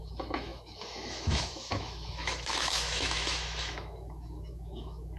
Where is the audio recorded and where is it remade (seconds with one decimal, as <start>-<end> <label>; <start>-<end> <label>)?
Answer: 0.0-5.2 remade